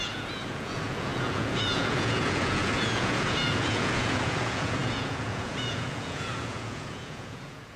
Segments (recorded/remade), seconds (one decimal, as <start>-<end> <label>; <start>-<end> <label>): 0.0-7.8 remade